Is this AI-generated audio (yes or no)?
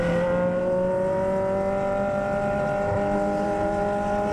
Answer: no